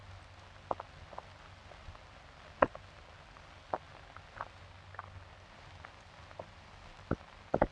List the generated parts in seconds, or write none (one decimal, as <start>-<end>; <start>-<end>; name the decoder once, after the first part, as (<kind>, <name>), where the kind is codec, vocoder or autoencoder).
none